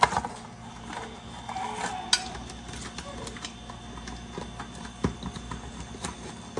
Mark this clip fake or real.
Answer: real